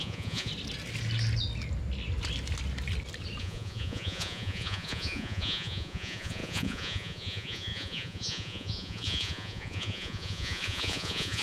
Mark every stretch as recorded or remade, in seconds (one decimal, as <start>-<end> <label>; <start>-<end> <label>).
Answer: 0.0-0.5 remade; 0.5-3.4 recorded; 3.4-11.4 remade

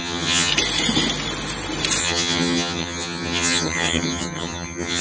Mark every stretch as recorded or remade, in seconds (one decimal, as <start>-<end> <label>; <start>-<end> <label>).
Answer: 0.0-0.5 remade; 0.5-2.0 recorded; 2.0-5.0 remade

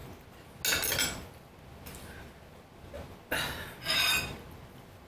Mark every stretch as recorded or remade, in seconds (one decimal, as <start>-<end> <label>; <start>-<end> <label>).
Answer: 0.0-5.1 recorded

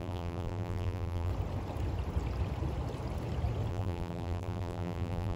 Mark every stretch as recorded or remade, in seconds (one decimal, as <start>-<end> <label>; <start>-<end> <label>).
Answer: 0.0-1.3 remade; 1.3-3.7 recorded; 3.7-5.4 remade

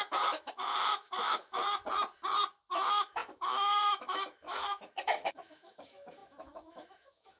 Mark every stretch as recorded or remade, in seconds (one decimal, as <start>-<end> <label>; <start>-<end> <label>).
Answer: 0.0-1.6 remade; 1.6-2.7 recorded; 2.7-7.4 remade

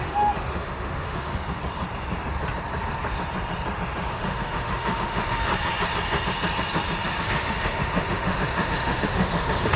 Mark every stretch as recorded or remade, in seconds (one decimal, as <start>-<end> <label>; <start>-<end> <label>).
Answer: 0.0-1.3 remade; 1.3-4.1 recorded; 4.1-5.5 remade; 5.5-7.2 recorded; 7.2-9.8 remade

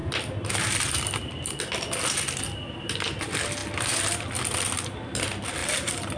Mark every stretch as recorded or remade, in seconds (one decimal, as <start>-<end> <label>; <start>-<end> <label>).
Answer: 0.0-5.6 recorded; 5.6-6.2 remade